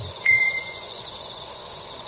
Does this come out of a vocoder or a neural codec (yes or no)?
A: yes